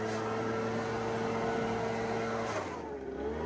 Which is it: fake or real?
real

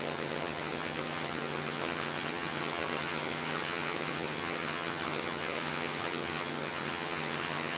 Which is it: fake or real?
fake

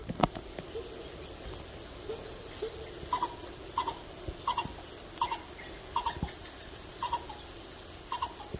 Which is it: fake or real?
real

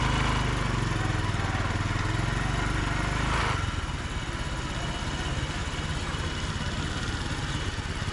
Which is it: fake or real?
real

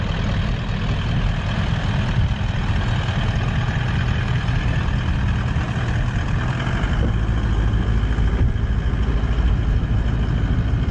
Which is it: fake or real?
real